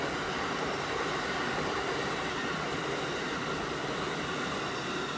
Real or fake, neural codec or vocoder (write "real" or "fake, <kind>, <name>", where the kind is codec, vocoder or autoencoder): real